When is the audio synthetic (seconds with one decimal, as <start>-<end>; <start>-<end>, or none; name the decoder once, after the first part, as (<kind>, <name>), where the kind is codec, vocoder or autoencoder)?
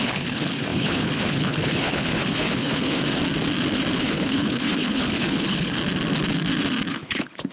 0.0-3.0 (codec, HILCodec); 4.0-5.8; 6.9-7.5